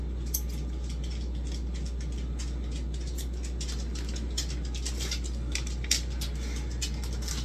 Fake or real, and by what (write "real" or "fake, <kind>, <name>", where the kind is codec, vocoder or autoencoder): real